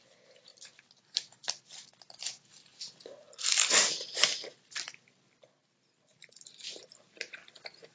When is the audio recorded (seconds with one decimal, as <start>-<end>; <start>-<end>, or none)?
0.0-7.9